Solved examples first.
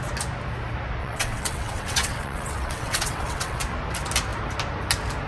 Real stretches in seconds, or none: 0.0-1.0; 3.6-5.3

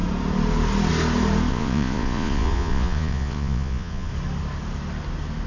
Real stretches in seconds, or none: 0.0-1.5; 4.1-5.5

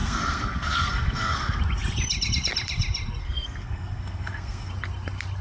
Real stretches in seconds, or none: 1.6-3.2; 4.7-5.4

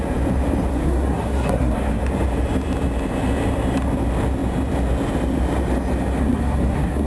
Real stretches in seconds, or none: 0.0-0.7; 2.0-6.2